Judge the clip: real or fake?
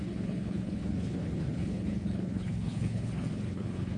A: fake